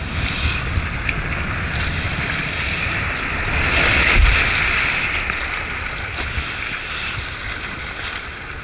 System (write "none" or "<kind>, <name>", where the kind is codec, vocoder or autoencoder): none